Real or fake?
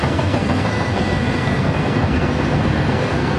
fake